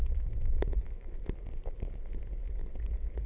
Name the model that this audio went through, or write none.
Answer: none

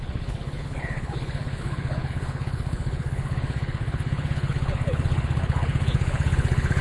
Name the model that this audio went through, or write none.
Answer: codec, HILCodec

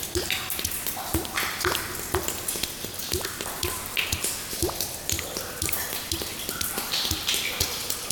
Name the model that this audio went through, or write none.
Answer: none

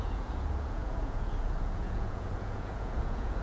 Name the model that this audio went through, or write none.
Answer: vocoder, Vocos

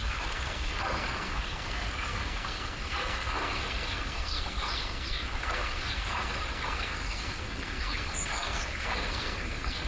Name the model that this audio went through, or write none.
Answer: codec, SNAC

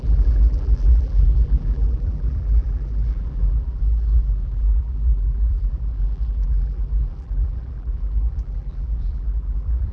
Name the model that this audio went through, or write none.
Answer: vocoder, BigVGAN v2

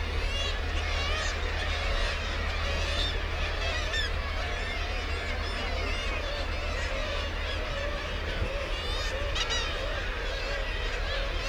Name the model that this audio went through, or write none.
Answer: none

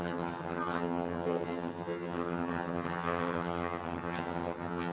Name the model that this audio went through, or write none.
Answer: vocoder, HiFi-GAN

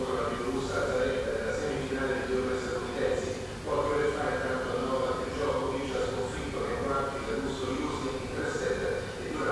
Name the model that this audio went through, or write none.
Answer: none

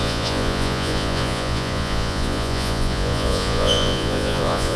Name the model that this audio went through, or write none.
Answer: vocoder, Vocos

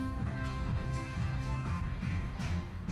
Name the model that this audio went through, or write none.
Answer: codec, DAC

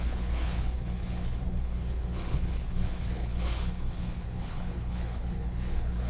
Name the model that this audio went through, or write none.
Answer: codec, HILCodec